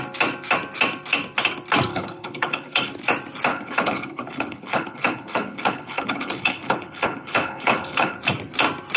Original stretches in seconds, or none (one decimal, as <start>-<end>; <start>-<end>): 0.0-1.9; 2.9-3.5; 8.2-9.0